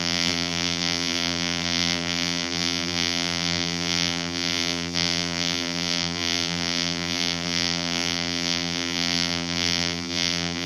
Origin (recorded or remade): remade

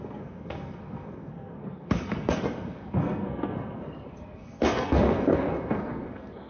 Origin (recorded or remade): remade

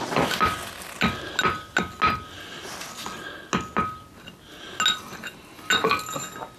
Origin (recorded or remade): recorded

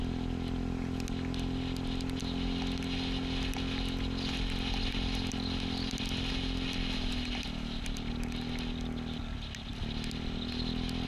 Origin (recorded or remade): recorded